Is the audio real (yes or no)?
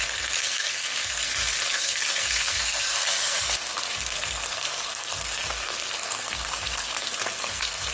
no